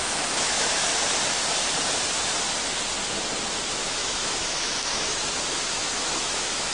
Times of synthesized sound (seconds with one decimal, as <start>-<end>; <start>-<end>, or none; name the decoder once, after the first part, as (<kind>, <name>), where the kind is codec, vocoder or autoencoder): 0.0-0.9 (autoencoder, DAC-VAE); 3.5-6.7